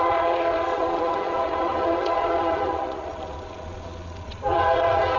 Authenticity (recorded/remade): remade